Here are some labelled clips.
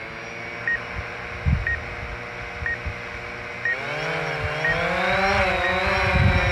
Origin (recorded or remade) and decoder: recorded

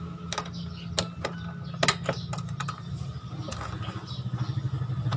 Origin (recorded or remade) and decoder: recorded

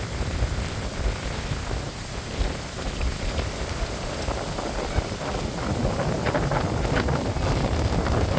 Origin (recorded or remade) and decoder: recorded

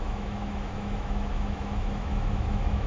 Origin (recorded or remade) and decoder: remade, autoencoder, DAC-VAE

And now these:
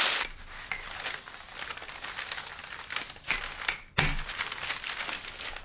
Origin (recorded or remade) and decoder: recorded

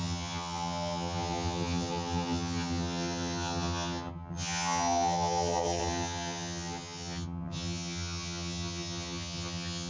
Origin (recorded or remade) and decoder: remade, vocoder, HiFi-GAN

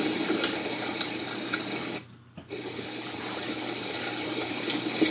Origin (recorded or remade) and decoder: recorded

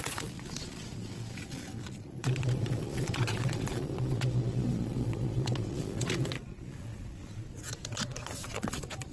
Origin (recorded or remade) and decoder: remade, vocoder, Vocos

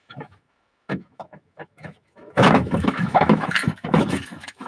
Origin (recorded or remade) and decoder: remade, autoencoder, DAC-VAE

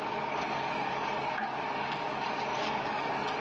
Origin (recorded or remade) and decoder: remade, codec, DAC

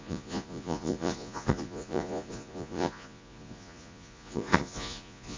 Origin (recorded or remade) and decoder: remade, vocoder, Vocos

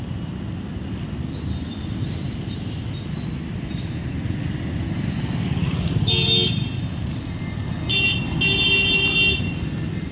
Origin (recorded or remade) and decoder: recorded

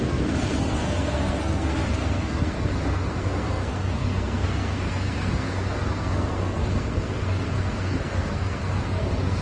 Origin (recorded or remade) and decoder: remade, codec, SNAC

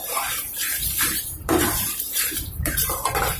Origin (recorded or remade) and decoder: remade, vocoder, BigVGAN v2